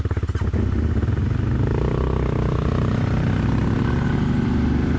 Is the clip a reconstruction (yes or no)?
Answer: no